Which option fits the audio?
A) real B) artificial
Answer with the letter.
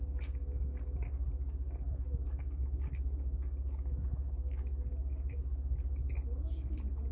A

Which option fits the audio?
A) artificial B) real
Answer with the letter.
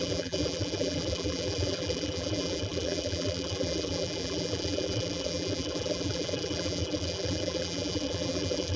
A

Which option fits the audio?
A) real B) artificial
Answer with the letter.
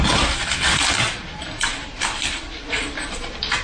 B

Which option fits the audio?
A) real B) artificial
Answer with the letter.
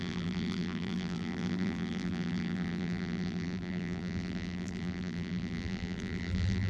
B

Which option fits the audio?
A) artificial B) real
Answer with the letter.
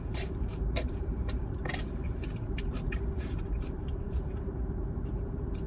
A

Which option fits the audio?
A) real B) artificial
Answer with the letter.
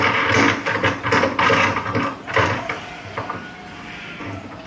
A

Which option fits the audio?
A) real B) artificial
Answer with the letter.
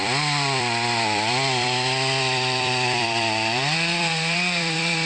B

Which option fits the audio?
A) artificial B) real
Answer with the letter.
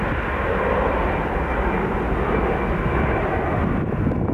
B